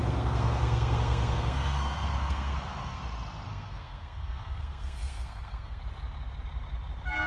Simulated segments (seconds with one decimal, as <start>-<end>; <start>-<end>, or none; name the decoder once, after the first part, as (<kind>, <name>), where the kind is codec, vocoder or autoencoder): 0.0-3.0 (codec, SNAC); 3.5-5.8